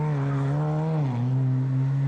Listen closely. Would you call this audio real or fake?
real